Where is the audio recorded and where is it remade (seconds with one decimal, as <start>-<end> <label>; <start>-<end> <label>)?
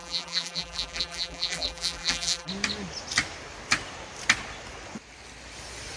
0.0-2.5 remade; 2.5-6.0 recorded